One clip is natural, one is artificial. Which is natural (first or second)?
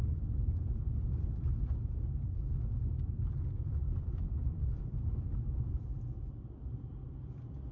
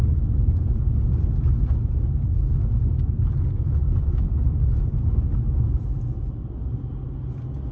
second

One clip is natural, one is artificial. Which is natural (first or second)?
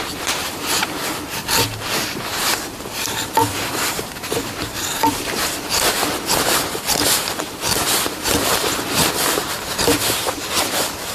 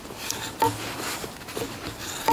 second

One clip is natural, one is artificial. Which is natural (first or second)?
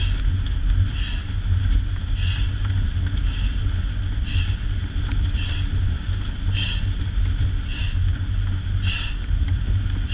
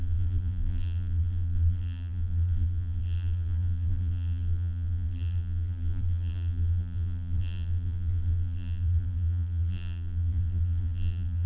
first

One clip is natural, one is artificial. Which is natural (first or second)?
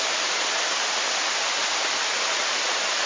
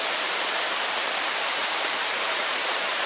first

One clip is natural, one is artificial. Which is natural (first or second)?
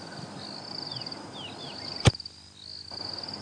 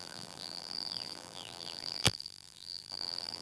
first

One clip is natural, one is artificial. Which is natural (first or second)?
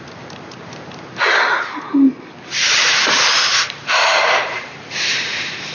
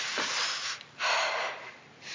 second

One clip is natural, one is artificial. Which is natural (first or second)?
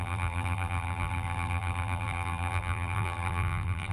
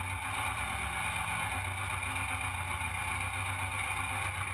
second